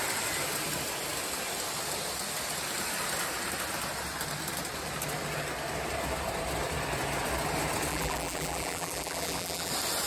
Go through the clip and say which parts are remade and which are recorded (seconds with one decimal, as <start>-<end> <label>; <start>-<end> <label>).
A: 0.0-7.9 recorded; 7.9-9.7 remade; 9.7-10.1 recorded